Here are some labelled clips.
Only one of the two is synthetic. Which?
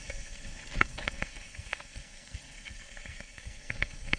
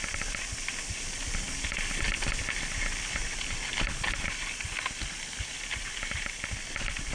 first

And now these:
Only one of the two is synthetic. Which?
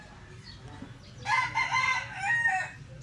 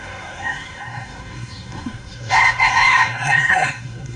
second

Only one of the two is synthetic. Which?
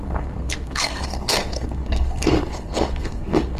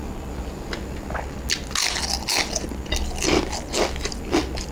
first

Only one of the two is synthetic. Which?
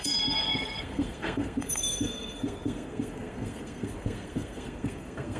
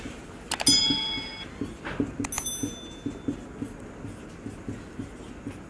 first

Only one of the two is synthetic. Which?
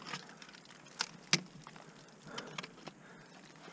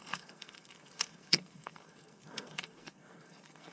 second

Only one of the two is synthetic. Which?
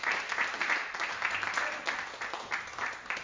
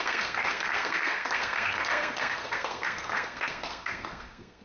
second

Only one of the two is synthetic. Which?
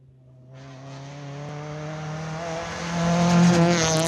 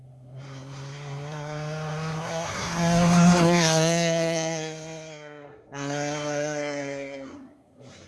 second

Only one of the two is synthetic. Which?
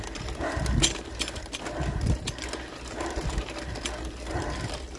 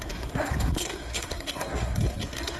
second